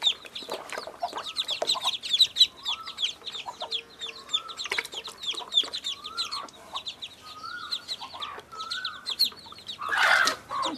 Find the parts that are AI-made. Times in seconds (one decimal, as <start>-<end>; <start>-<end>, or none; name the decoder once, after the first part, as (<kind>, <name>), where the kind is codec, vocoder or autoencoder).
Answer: none